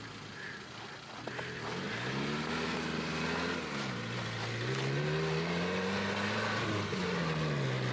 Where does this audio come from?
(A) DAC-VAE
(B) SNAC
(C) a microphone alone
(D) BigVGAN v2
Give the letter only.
C